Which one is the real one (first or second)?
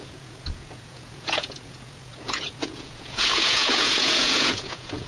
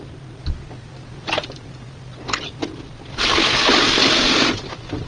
second